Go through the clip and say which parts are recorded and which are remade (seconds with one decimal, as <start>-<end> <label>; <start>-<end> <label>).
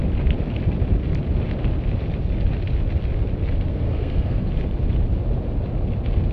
0.0-3.7 recorded; 3.7-4.5 remade; 4.5-6.3 recorded